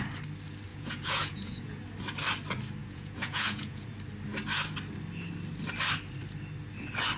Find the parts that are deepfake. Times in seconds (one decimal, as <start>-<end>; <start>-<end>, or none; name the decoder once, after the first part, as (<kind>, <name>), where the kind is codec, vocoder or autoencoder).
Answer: 0.7-1.8 (vocoder, Vocos); 2.8-3.9